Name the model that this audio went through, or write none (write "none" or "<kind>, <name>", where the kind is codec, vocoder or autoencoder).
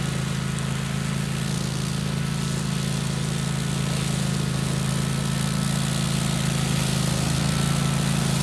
none